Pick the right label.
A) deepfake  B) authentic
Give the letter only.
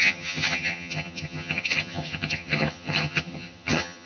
A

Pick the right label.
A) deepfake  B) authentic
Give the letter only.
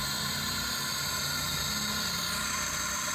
B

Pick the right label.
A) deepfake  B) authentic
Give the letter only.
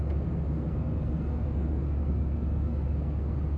A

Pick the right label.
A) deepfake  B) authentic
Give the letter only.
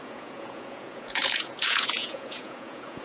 A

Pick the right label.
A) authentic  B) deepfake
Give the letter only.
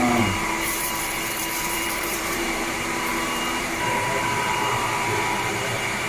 B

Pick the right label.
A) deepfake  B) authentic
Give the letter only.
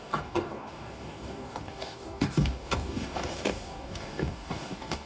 A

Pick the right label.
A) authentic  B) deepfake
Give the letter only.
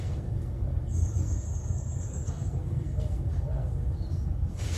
B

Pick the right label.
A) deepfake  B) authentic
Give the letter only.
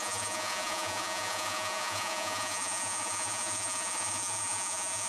A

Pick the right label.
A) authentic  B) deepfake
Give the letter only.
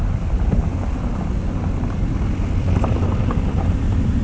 A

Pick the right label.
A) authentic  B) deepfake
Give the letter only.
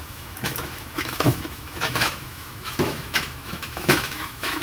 B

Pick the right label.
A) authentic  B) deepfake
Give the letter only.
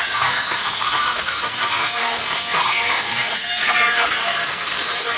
B